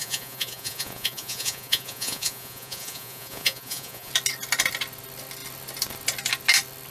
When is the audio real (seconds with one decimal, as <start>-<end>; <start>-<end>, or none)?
4.1-6.9